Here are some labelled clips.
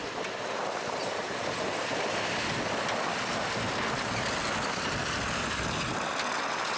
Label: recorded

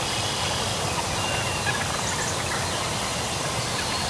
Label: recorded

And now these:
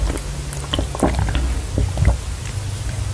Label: recorded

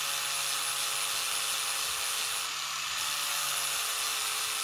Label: recorded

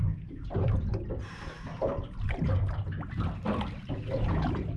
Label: recorded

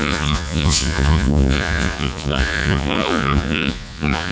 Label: remade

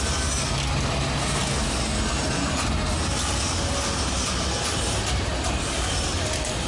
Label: recorded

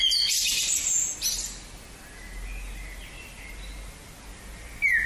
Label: recorded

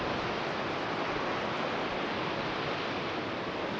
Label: recorded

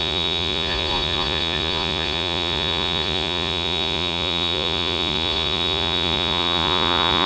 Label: remade